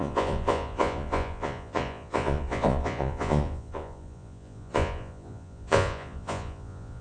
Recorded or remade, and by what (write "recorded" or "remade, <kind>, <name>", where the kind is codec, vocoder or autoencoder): remade, vocoder, Vocos